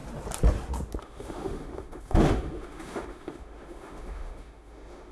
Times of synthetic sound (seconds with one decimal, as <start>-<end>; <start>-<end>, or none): 1.0-5.1